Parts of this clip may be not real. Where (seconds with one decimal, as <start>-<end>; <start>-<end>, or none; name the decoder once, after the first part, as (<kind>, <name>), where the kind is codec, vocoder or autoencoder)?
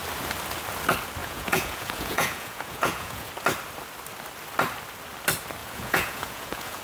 1.2-3.3 (vocoder, Vocos); 5.6-6.8